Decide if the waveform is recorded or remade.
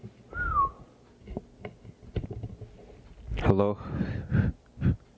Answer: recorded